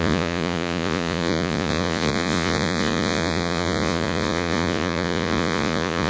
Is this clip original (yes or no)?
no